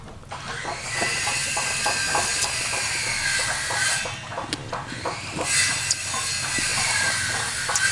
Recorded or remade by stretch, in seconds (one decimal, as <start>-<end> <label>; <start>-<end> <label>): 0.0-7.9 recorded